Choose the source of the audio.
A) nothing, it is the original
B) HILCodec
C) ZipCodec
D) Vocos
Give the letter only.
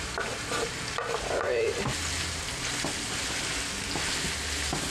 A